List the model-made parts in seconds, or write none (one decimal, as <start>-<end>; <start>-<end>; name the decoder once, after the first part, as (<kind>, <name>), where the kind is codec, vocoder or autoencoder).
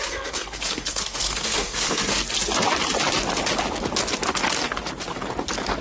0.0-2.2 (codec, SNAC)